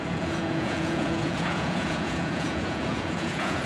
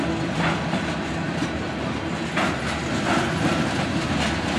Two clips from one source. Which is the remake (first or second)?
first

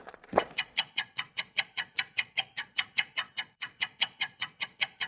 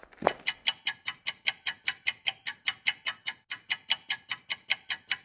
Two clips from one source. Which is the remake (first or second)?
first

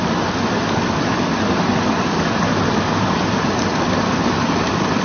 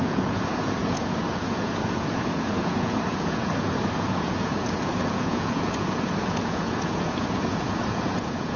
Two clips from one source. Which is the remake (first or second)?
second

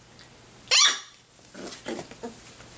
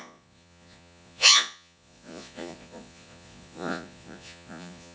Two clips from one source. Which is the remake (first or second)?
second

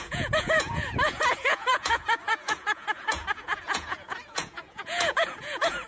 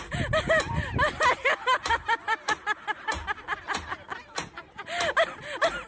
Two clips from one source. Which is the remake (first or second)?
first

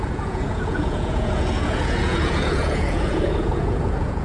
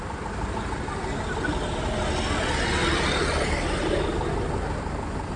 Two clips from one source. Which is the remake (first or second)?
first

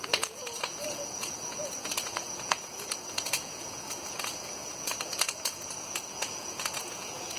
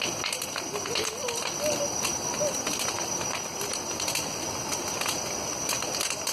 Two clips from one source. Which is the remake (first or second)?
first